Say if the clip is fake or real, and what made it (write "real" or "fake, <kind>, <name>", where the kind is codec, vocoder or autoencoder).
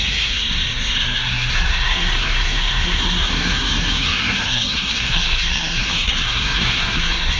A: fake, codec, SNAC